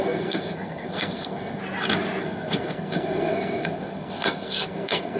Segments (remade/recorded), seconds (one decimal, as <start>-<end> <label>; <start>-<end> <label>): 0.0-1.6 remade; 1.6-2.2 recorded; 2.2-5.2 remade